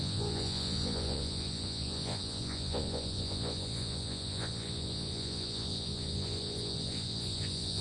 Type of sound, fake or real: fake